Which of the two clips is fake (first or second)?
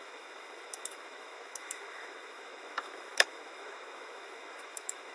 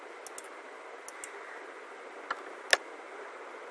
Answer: first